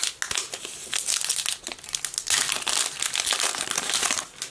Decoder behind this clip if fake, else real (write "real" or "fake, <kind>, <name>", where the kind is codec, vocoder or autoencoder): real